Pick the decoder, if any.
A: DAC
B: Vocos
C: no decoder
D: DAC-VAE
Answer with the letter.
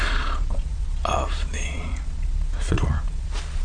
B